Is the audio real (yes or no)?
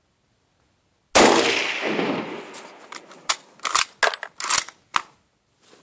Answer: yes